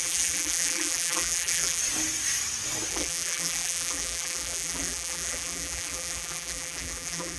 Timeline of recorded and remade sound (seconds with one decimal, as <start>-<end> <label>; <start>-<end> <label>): 0.0-1.8 remade; 1.8-2.9 recorded; 2.9-7.4 remade